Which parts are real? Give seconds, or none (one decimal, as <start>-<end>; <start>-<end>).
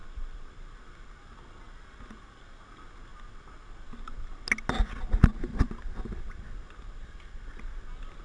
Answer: 0.0-8.2